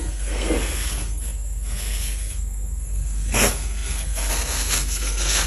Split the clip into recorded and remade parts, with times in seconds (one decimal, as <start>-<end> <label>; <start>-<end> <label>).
0.0-5.5 remade